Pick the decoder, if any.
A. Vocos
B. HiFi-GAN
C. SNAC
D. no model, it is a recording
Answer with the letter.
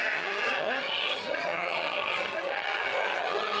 B